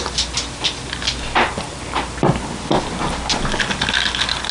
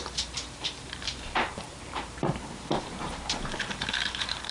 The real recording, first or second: first